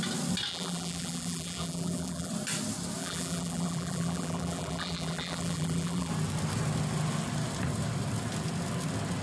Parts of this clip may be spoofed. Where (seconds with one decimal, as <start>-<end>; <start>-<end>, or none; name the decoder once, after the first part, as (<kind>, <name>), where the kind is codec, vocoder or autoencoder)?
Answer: 0.5-2.3 (vocoder, BigVGAN v2); 3.0-6.1